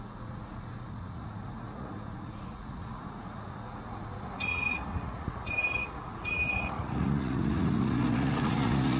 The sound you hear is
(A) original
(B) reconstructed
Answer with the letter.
B